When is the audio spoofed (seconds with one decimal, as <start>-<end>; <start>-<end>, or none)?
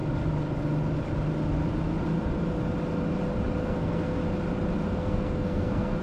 3.6-4.2; 5.0-6.0